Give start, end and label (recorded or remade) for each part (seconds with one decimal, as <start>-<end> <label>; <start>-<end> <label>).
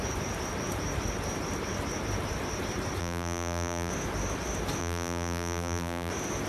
0.0-3.0 recorded; 3.0-3.9 remade; 3.9-4.8 recorded; 4.8-6.1 remade; 6.1-6.5 recorded